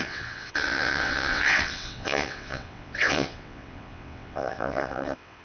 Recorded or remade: remade